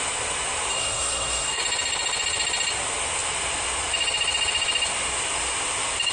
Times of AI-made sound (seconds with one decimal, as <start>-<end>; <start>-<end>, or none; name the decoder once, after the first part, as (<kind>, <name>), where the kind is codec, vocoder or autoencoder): 0.7-1.6 (codec, SNAC)